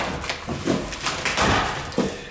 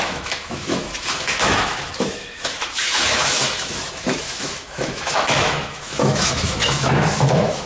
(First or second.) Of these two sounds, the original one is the first